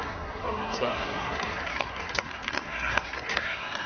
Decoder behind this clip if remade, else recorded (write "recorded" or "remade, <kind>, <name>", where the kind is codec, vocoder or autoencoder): remade, codec, SNAC